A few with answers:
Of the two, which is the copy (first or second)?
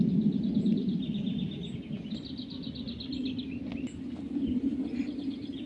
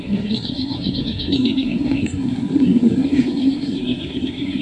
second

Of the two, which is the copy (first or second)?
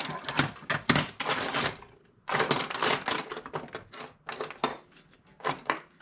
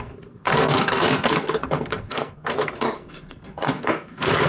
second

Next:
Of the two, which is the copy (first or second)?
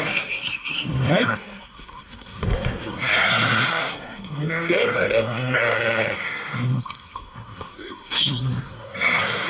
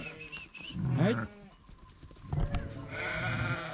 first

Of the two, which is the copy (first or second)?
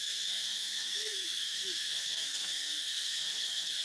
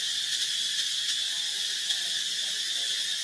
first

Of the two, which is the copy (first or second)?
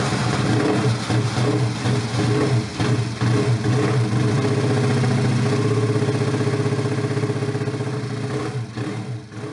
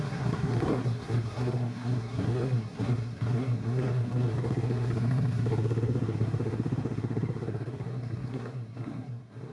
second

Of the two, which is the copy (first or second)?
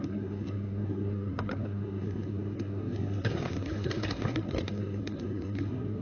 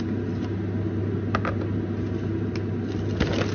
first